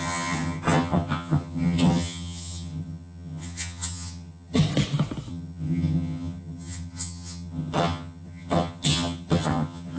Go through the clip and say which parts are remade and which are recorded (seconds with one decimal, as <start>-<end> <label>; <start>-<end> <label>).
0.0-4.6 remade; 4.6-5.3 recorded; 5.3-10.0 remade

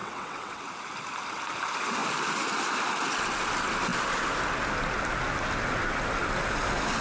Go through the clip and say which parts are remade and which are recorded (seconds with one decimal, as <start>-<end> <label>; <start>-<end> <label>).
0.0-0.6 remade; 0.6-7.0 recorded